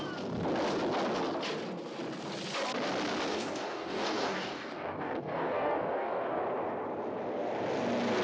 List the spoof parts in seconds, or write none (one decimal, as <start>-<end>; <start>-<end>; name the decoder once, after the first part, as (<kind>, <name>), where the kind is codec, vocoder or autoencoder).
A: 3.3-6.4 (codec, DAC)